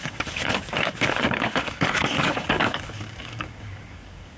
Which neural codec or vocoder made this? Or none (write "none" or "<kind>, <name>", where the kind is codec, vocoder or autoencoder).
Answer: codec, DAC